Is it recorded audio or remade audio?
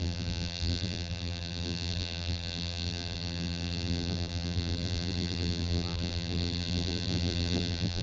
remade